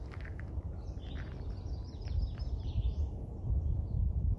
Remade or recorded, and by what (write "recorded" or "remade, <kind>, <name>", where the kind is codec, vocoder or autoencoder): remade, vocoder, BigVGAN v2